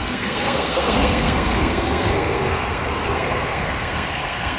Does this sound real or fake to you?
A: fake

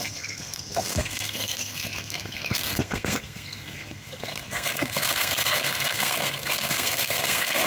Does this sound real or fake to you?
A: fake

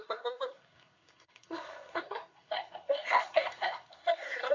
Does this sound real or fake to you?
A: fake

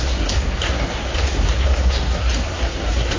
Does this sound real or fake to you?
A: fake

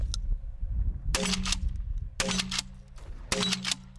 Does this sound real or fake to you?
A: real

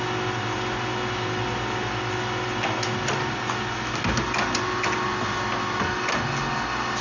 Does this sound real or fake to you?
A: real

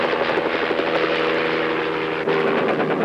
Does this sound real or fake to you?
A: real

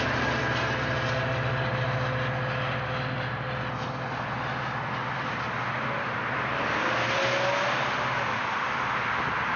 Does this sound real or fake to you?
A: real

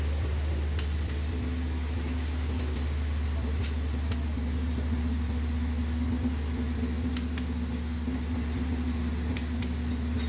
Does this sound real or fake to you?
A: real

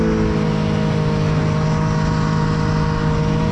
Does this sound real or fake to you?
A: real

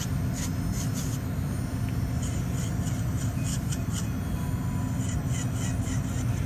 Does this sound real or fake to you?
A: real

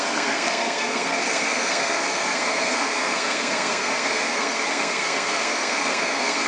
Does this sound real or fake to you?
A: fake